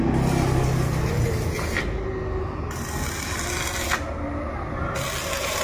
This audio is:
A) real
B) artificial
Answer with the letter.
A